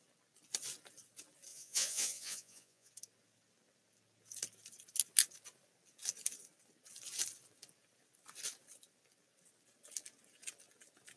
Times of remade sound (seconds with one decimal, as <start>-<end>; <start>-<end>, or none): 1.5-2.9